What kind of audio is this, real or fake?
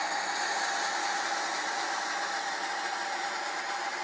real